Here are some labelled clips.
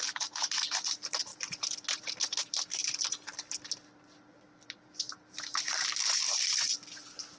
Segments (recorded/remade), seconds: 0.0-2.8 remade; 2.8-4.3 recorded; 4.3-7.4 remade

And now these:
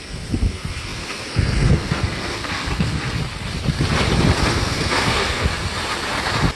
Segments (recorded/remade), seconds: 0.0-3.2 remade; 3.2-4.5 recorded; 4.5-5.5 remade; 5.5-6.6 recorded

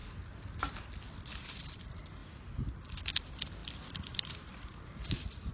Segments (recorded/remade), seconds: 0.0-0.5 recorded; 0.5-2.2 remade; 2.2-3.2 recorded; 3.2-5.5 remade

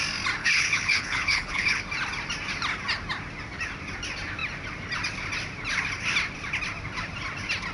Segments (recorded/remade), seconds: 0.0-0.4 recorded; 0.4-1.8 remade; 1.8-7.7 recorded

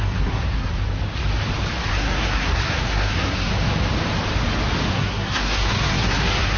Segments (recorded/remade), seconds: 0.0-0.7 remade; 0.7-1.9 recorded; 1.9-3.5 remade; 3.5-4.9 recorded; 4.9-6.6 remade